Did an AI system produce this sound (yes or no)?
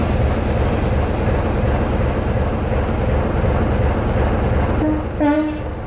no